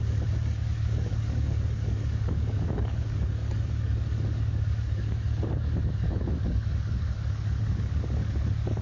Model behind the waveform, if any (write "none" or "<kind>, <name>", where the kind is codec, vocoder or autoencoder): codec, DAC